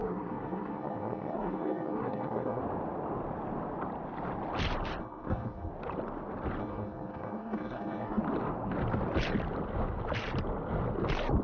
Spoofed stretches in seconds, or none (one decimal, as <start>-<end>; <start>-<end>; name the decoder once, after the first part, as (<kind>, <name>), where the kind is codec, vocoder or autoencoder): 0.0-2.6 (codec, SNAC); 5.0-5.7; 6.6-8.2